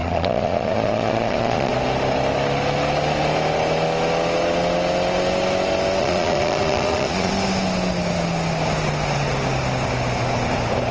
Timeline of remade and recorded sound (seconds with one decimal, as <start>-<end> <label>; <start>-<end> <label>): 0.0-1.7 remade; 1.7-6.0 recorded; 6.0-7.3 remade; 7.3-10.9 recorded